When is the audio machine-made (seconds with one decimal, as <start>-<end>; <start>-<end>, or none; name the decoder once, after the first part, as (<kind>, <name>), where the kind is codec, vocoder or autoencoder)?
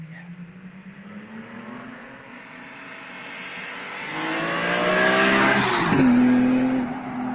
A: none